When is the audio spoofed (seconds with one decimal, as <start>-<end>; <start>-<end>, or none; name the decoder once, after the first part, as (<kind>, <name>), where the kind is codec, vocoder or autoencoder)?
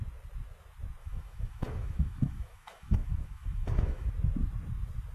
1.0-4.1 (autoencoder, DAC-VAE)